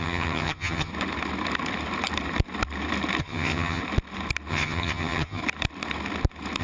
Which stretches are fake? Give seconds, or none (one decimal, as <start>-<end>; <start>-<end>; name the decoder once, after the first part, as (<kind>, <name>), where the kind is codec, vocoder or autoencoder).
0.0-0.9 (vocoder, HiFi-GAN); 3.2-3.8; 4.5-5.4